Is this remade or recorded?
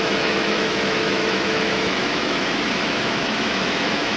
remade